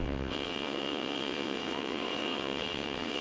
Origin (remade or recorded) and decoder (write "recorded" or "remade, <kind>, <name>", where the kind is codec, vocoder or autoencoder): remade, vocoder, WaveNeXt